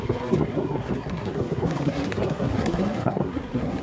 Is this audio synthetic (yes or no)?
yes